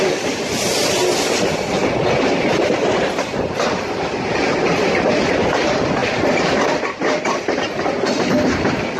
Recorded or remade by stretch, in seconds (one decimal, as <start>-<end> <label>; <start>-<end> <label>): 0.0-0.8 remade; 0.8-2.7 recorded; 2.7-9.0 remade